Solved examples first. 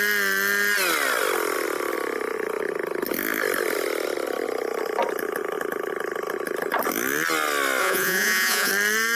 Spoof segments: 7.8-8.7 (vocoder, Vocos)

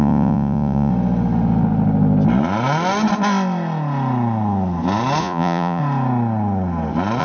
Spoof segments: 0.0-0.9 (vocoder, Vocos); 5.2-5.8

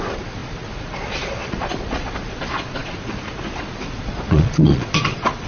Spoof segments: 0.0-5.5 (vocoder, Vocos)

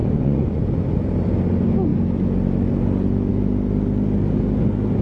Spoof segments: 0.0-0.6 (vocoder, Vocos)